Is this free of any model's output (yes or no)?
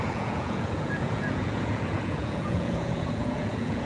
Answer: no